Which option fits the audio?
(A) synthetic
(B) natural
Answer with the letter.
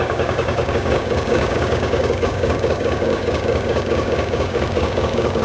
A